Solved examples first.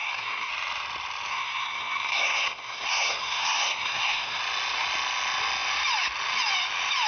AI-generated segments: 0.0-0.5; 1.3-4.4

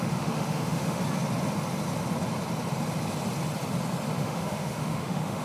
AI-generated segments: 0.0-1.0; 4.2-5.4

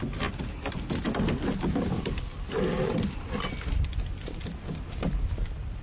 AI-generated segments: 2.3-5.8